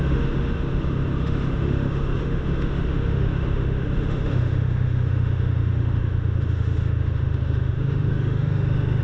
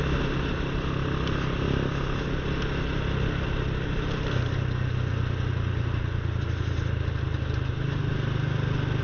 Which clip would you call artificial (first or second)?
first